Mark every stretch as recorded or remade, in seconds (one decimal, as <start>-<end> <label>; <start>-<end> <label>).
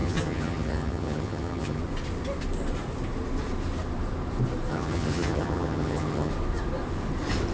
0.0-1.8 remade; 1.8-4.7 recorded; 4.7-6.3 remade; 6.3-7.5 recorded